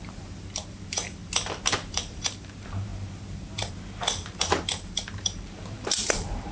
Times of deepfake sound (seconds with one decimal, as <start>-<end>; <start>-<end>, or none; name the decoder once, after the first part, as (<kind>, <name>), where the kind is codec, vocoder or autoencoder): 0.0-1.2 (vocoder, BigVGAN v2); 1.9-6.5